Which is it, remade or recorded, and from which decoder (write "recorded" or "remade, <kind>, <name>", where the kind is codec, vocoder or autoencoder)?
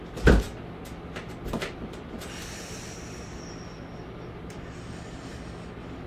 recorded